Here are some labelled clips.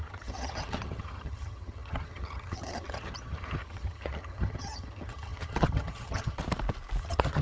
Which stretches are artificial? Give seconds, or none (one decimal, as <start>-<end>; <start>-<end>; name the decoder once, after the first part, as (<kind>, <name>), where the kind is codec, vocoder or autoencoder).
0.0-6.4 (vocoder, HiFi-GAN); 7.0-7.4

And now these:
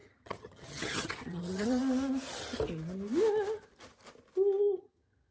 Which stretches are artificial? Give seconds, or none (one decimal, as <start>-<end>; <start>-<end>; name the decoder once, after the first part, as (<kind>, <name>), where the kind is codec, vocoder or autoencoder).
0.0-1.8 (vocoder, HiFi-GAN); 4.8-5.3

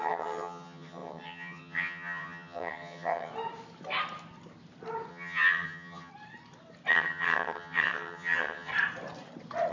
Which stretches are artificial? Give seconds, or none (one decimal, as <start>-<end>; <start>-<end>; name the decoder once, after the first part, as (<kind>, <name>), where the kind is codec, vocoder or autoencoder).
0.0-3.3 (vocoder, HiFi-GAN); 5.1-6.1; 6.9-8.7

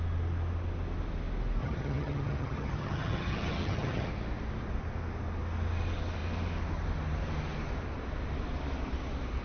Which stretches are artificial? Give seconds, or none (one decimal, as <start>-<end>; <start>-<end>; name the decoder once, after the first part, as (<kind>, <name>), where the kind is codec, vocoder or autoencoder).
1.6-4.1 (vocoder, HiFi-GAN)